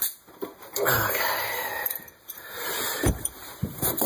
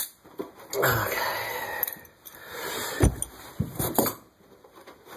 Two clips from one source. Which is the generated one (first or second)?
first